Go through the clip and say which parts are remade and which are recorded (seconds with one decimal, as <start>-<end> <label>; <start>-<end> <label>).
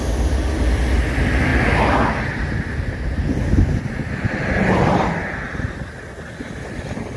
0.0-7.2 recorded